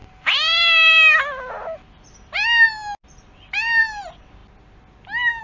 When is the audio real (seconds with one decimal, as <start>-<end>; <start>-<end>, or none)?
0.0-5.4

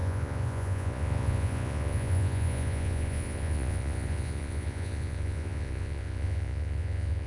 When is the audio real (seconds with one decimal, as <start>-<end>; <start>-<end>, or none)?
none

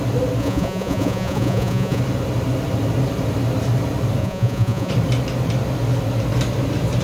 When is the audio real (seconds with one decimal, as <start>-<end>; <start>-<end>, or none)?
0.0-0.4; 2.0-4.2; 4.9-7.0

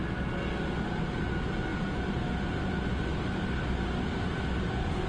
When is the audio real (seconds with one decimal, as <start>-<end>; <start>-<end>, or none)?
0.0-5.1

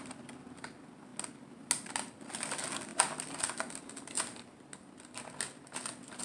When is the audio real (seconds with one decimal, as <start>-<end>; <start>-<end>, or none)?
0.0-6.2